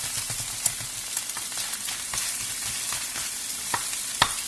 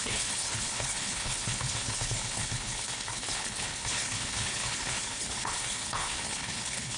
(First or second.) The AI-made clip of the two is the second